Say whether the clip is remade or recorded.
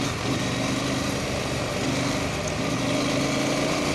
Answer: recorded